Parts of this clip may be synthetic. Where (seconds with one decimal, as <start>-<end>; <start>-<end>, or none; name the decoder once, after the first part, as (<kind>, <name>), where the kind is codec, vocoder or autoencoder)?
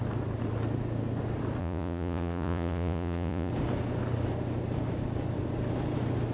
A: 1.6-3.5 (vocoder, Vocos)